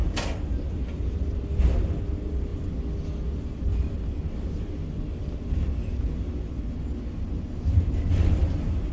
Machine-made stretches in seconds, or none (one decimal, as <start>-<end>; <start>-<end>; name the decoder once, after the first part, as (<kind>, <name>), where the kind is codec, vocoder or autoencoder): none